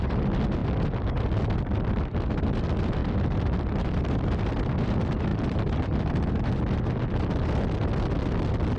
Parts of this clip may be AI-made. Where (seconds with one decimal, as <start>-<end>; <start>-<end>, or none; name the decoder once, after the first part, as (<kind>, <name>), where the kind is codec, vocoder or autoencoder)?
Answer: 3.0-4.0 (vocoder, BigVGAN v2); 5.3-6.2